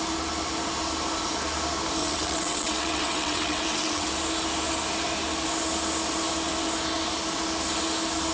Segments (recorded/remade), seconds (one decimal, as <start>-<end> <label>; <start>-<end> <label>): 0.0-2.0 recorded; 2.0-4.1 remade; 4.1-8.3 recorded